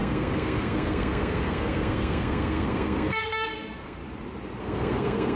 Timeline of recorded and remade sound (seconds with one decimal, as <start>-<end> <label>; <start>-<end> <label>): 0.0-4.0 remade; 4.0-4.6 recorded; 4.6-5.4 remade